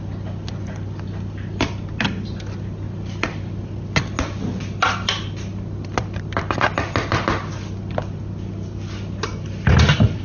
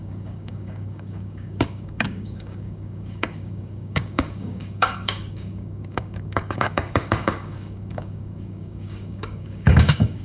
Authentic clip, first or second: first